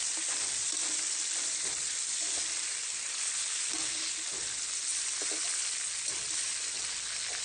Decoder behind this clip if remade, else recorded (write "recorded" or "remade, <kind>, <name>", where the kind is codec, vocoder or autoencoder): recorded